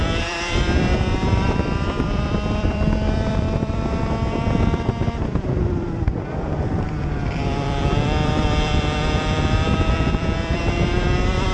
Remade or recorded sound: remade